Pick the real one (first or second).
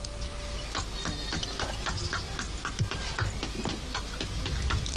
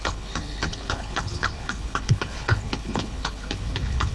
first